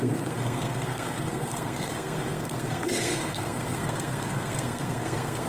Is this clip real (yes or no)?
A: no